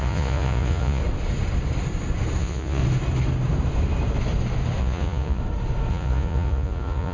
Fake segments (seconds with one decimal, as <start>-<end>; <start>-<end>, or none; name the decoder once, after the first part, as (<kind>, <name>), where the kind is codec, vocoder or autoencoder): 0.0-1.0 (vocoder, Vocos); 2.4-2.8; 4.8-5.4; 5.9-7.1

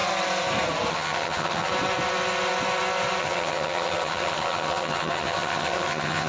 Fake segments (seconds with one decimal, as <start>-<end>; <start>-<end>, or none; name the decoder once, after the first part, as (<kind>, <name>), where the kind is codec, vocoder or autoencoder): 0.9-1.7 (vocoder, HiFi-GAN); 3.2-6.3

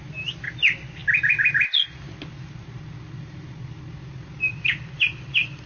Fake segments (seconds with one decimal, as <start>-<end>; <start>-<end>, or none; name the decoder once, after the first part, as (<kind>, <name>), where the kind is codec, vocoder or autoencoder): none

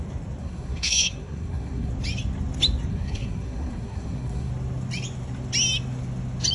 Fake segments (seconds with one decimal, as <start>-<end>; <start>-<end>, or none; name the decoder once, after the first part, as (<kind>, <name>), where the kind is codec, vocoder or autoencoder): 0.4-1.9 (codec, SNAC); 2.9-4.5

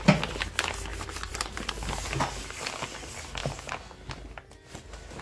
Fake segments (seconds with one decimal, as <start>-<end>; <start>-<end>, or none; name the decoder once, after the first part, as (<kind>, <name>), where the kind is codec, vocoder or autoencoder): 0.9-1.7 (vocoder, BigVGAN v2)

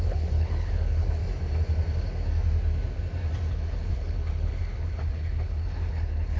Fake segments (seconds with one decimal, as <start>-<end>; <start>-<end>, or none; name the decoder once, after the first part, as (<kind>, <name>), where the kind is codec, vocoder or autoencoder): 0.0-1.2 (codec, HILCodec); 3.5-6.4

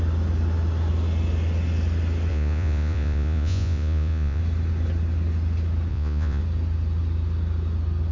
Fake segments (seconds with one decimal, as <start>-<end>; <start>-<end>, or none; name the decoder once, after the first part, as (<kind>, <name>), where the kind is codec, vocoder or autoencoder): 2.3-4.4 (vocoder, Vocos); 5.9-6.4